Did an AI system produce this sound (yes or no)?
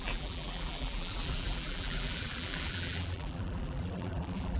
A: yes